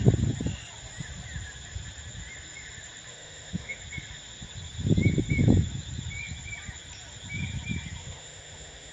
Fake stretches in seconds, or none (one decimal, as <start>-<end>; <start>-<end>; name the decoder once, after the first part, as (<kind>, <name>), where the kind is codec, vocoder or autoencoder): 3.1-3.8 (autoencoder, DAC-VAE); 8.0-8.9